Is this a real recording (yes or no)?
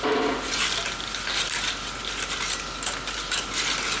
yes